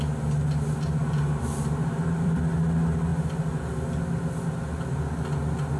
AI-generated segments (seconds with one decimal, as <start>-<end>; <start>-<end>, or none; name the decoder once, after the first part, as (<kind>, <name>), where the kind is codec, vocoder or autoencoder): 1.0-2.4 (vocoder, BigVGAN v2)

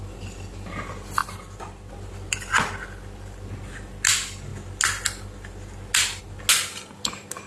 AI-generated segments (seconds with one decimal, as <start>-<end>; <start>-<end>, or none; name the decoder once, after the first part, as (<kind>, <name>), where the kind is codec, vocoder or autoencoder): none

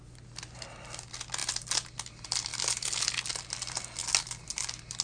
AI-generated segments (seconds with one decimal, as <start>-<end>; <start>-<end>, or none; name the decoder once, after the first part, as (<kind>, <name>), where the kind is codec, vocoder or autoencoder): none

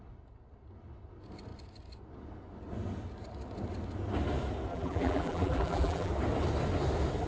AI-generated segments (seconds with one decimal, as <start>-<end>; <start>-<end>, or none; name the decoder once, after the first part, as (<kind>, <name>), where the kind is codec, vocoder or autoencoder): 4.7-6.1 (vocoder, BigVGAN v2)

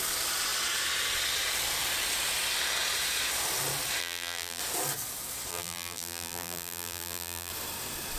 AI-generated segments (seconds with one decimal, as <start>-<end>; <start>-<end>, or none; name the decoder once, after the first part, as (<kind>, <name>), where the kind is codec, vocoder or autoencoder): 4.0-4.6 (vocoder, BigVGAN v2); 5.5-7.5

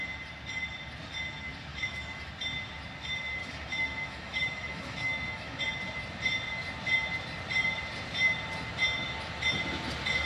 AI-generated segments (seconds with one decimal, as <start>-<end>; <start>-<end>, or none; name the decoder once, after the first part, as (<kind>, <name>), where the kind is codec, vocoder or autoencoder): 1.7-2.3 (autoencoder, DAC-VAE); 3.4-5.6

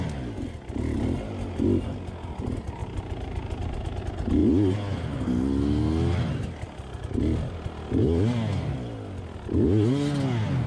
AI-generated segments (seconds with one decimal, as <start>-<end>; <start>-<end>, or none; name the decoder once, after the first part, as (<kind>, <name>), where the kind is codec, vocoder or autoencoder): 2.8-4.0 (vocoder, BigVGAN v2)

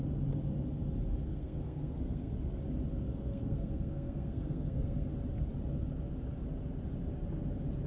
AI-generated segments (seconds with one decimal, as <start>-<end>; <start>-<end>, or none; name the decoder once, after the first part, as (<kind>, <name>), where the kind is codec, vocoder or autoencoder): 1.3-2.6 (codec, SNAC); 3.1-5.1